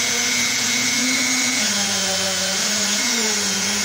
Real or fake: fake